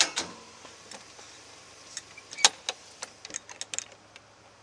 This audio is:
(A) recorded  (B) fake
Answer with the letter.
A